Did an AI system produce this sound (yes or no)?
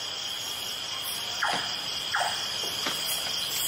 no